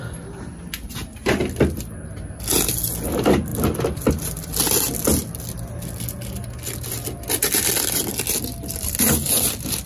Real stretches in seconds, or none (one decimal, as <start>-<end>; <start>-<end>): 0.0-3.5; 4.1-8.5; 9.1-9.9